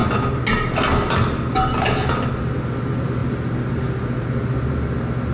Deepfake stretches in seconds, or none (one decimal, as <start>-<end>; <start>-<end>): none